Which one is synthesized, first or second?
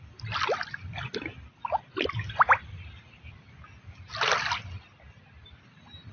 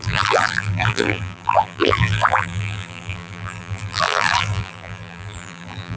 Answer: second